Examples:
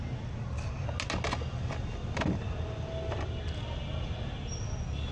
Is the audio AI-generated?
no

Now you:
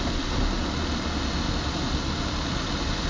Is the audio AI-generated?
no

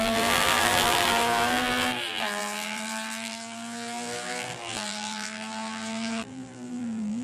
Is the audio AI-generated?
yes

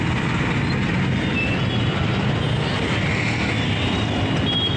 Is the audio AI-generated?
no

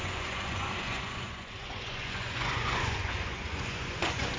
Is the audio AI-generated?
yes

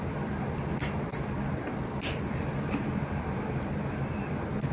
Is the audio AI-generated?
no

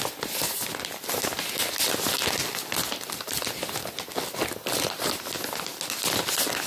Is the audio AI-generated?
no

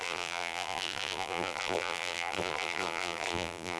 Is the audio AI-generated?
yes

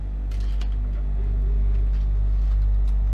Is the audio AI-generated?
no